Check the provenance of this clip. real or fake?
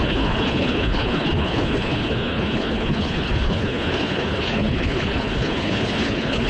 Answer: fake